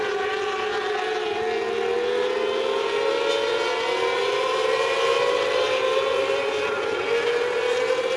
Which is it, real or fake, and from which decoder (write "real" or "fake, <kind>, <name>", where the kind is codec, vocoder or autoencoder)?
real